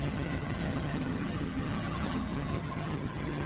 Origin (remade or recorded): remade